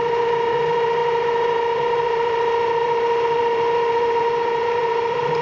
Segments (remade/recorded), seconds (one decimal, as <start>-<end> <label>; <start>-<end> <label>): 0.0-5.4 remade